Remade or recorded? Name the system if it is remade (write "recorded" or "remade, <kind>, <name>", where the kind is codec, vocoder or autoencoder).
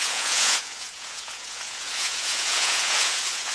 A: remade, vocoder, Vocos